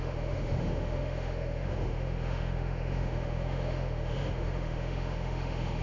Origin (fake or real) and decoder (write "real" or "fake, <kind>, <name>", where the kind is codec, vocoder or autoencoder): fake, autoencoder, DAC-VAE